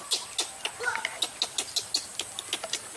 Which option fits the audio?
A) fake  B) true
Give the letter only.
B